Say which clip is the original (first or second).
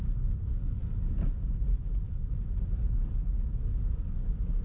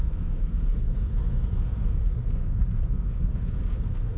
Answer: first